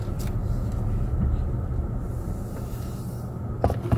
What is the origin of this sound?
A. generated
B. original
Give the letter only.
B